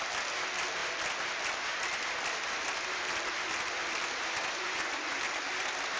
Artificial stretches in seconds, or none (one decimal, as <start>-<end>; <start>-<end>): 4.4-5.2